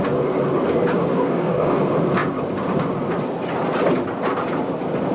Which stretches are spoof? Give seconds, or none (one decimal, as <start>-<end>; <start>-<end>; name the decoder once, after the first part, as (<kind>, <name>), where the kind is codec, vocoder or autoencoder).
1.1-1.8 (codec, DAC)